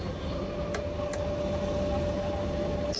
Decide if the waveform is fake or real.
real